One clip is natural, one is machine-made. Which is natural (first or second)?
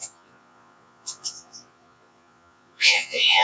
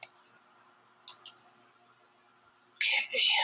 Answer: second